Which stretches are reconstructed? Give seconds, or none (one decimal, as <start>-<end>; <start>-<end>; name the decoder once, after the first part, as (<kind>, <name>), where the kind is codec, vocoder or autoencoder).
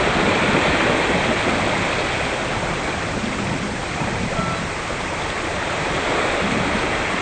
none